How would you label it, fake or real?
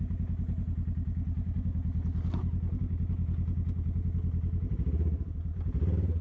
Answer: real